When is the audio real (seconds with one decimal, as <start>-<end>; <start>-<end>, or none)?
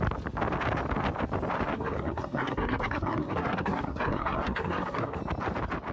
0.0-1.7; 5.2-5.9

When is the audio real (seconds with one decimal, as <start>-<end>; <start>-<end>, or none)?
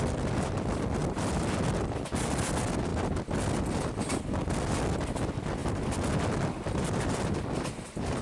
0.0-8.2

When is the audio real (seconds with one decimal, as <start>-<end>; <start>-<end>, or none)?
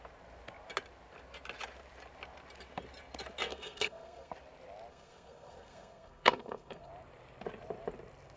0.0-3.5; 4.3-4.9; 6.9-8.4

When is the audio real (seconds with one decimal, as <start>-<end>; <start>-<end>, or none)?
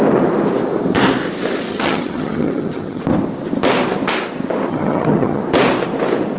0.0-1.7; 3.0-4.7; 5.4-6.4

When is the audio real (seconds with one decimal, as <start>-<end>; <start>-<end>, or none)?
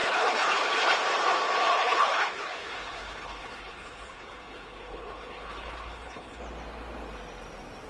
0.7-1.7; 6.4-7.9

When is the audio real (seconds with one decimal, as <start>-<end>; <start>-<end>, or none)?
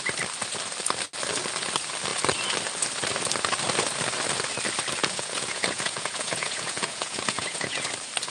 0.0-5.0; 7.9-8.3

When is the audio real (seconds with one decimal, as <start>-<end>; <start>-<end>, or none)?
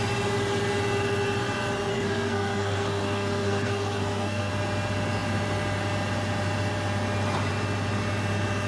0.0-1.9; 4.5-8.7